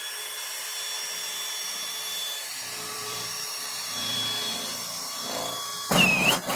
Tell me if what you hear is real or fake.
fake